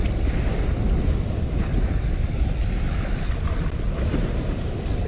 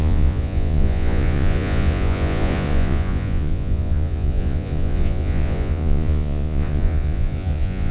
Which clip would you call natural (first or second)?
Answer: first